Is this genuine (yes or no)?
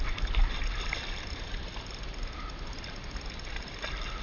yes